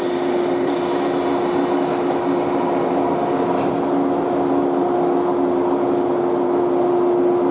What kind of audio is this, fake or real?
real